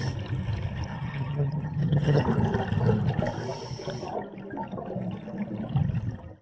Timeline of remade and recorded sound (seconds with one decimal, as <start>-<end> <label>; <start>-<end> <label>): 0.0-0.9 recorded; 0.9-2.2 remade; 2.2-6.4 recorded